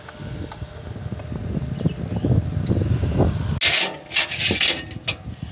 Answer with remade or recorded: recorded